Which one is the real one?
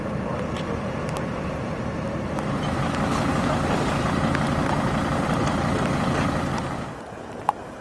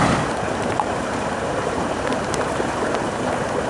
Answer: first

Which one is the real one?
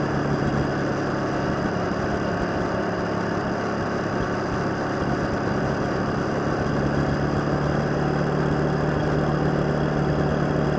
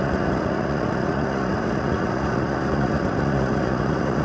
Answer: first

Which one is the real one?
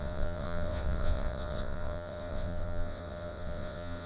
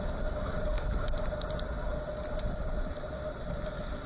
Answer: second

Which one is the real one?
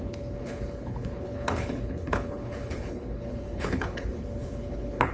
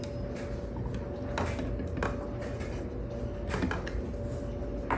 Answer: second